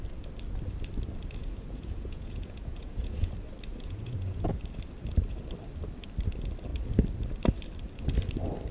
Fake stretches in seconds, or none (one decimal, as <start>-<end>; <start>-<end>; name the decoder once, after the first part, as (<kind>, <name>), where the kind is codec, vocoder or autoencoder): 1.4-3.3 (vocoder, Vocos); 3.7-4.6